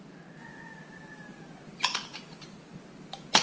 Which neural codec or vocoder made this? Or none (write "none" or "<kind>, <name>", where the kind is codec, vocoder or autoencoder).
none